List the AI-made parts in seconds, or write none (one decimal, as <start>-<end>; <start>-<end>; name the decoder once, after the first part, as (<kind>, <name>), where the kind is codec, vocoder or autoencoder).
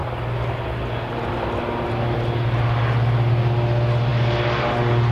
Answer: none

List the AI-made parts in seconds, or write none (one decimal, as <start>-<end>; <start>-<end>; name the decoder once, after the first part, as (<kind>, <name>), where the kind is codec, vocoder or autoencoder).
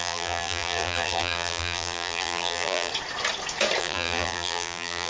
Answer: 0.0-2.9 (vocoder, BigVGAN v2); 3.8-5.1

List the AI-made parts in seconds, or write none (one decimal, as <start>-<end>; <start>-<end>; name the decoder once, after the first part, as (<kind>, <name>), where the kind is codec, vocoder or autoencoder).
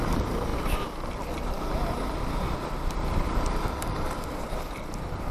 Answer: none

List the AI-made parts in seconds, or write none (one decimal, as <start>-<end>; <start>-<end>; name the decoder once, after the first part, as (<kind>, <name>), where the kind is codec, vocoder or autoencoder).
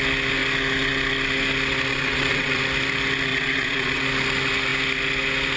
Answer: 1.9-2.6 (vocoder, WaveNeXt); 3.3-4.0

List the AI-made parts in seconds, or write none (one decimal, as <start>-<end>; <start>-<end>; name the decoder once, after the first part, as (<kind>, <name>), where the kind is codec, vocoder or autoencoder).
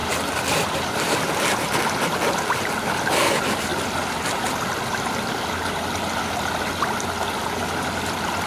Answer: 3.7-5.0 (vocoder, BigVGAN v2)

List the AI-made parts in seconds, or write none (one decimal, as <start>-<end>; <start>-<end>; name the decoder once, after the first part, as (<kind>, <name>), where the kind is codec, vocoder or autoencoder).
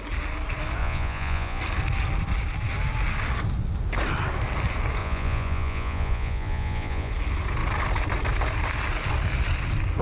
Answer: 0.8-1.6 (vocoder, Vocos); 5.0-7.1